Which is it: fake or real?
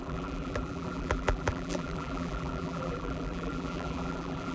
fake